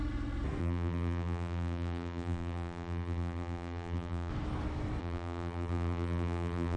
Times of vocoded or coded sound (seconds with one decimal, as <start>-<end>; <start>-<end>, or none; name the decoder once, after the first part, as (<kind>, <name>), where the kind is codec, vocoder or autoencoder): 0.6-4.3 (vocoder, BigVGAN v2); 5.0-6.8

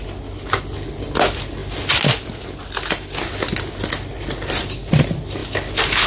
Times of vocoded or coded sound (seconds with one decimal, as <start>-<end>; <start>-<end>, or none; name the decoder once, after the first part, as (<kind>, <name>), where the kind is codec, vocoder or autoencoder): none

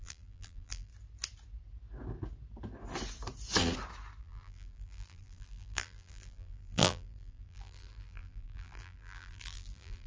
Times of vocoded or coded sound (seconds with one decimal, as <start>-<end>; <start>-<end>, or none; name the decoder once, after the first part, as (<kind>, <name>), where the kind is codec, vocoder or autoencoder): 0.0-0.9 (vocoder, BigVGAN v2); 4.2-10.1

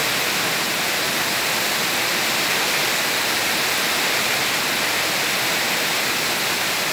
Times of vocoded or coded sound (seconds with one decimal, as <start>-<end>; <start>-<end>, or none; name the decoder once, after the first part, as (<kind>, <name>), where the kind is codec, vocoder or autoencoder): none

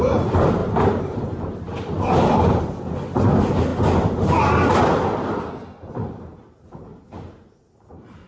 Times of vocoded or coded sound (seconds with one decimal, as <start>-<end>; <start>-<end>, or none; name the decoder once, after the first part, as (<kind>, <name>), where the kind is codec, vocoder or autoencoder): 0.6-2.6 (vocoder, BigVGAN v2)